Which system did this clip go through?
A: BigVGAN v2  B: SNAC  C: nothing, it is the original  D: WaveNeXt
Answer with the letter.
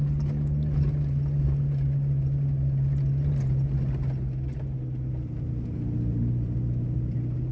C